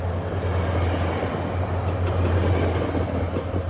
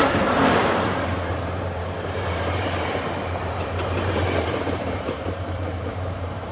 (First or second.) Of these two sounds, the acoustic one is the first